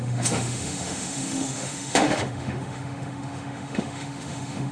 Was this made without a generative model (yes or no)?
no